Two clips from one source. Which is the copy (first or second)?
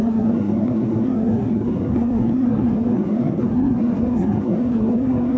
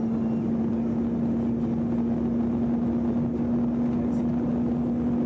first